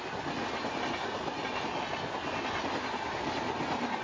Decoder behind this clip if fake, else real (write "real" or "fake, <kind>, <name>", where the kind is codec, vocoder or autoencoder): real